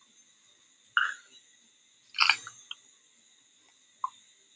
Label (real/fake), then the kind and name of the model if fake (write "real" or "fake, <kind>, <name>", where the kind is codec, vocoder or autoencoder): real